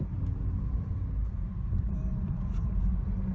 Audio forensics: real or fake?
fake